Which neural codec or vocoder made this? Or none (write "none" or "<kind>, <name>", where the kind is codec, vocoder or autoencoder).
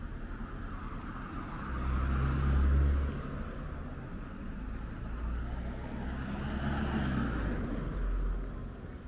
none